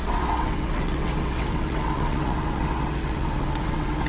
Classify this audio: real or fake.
fake